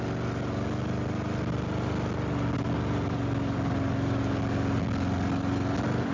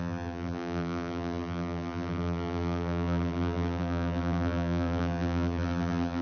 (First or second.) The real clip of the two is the first